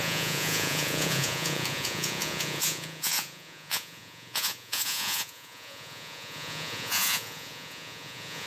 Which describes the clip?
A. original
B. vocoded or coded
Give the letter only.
B